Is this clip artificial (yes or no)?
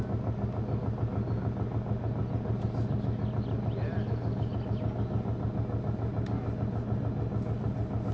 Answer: no